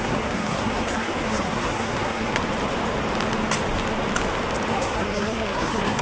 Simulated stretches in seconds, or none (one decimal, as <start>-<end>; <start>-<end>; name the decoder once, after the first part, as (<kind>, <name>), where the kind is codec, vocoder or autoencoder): 0.0-2.4 (codec, SNAC); 4.7-6.0